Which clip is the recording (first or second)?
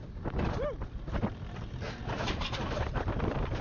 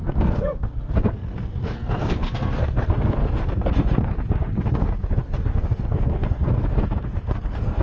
first